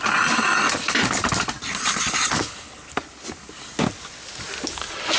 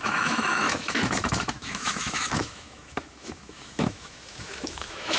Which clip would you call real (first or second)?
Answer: first